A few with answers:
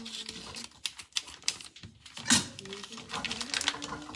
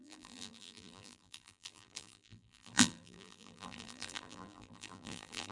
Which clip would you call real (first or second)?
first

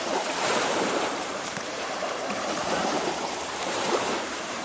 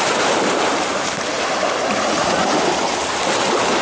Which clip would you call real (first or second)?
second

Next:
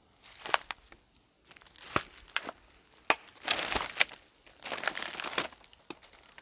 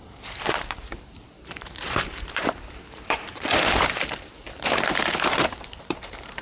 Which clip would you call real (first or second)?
first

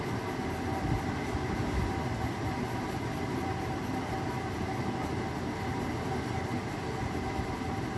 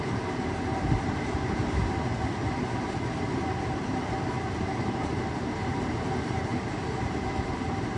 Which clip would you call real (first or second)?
first